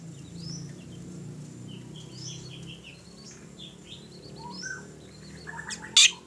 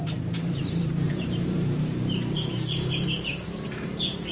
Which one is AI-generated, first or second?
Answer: second